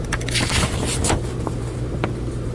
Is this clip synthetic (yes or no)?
yes